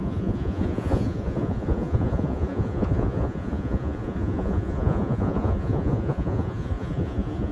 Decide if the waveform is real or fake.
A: fake